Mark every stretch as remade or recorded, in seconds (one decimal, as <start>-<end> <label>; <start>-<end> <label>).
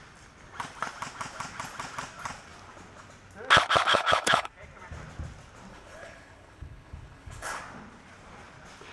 0.0-3.9 recorded; 3.9-4.5 remade; 4.5-5.7 recorded; 5.7-7.6 remade; 7.6-8.9 recorded